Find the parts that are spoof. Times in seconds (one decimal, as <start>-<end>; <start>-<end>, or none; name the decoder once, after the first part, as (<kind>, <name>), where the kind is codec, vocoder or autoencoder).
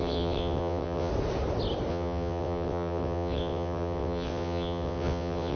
0.0-1.1 (vocoder, WaveNeXt); 1.9-5.6